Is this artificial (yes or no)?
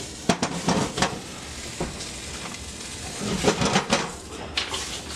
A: no